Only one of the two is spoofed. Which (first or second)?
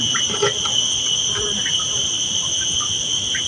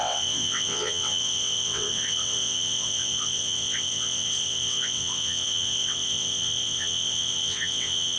second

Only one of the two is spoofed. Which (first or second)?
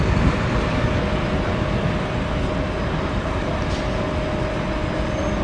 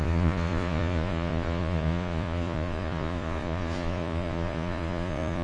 second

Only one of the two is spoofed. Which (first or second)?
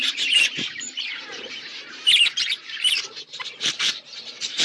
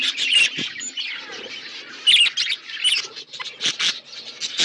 first